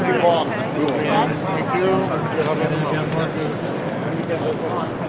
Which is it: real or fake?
real